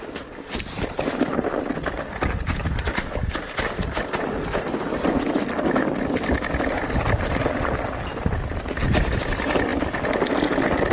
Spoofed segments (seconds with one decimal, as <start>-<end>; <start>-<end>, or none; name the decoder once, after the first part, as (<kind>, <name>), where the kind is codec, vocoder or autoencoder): none